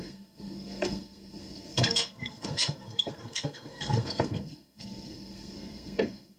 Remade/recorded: remade